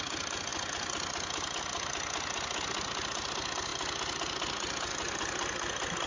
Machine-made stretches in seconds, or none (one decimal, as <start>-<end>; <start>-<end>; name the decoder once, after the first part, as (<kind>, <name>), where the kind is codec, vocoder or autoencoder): none